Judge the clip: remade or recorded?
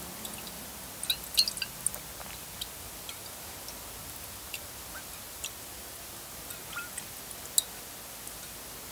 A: recorded